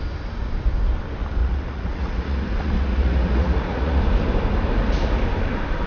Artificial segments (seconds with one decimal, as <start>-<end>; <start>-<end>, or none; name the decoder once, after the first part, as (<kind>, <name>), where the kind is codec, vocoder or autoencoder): 1.4-4.0 (vocoder, Vocos)